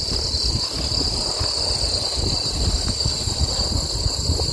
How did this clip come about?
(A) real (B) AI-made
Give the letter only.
A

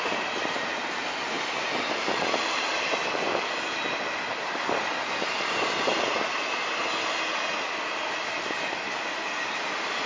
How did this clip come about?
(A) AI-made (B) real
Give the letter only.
B